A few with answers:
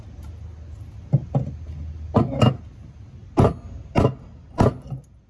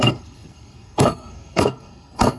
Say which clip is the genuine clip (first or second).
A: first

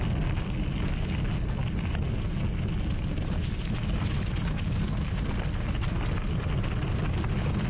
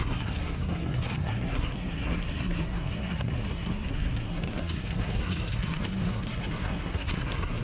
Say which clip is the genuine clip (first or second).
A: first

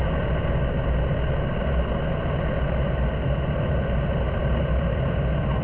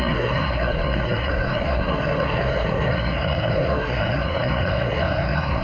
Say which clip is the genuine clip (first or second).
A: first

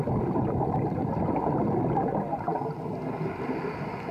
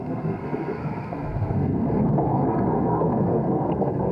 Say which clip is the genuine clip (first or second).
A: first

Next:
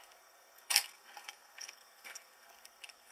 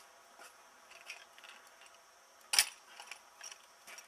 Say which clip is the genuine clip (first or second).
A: second